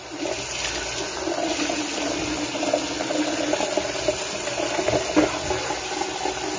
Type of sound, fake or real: real